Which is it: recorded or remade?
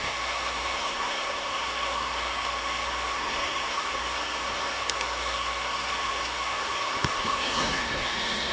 remade